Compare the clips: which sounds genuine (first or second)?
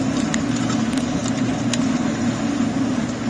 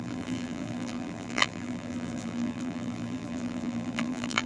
first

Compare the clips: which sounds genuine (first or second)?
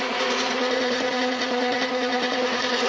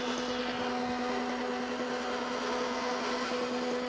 second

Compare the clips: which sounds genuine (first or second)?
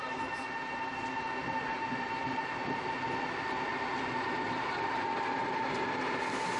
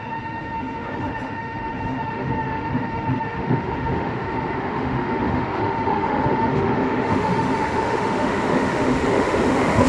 first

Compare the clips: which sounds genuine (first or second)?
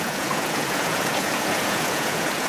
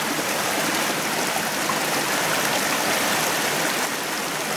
second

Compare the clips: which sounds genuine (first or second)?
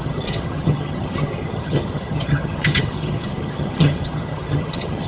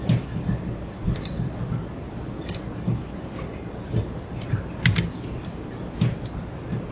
second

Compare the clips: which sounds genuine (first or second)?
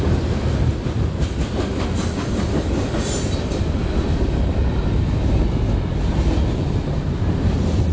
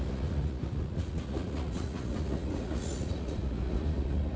first